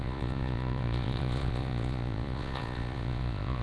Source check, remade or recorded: remade